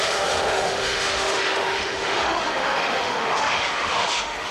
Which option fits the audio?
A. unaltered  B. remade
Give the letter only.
B